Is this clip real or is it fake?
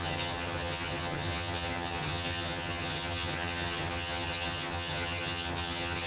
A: fake